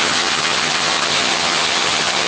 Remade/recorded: remade